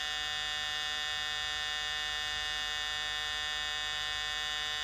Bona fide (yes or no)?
yes